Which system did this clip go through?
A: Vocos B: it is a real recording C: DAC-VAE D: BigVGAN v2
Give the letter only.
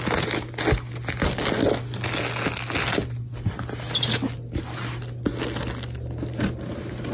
B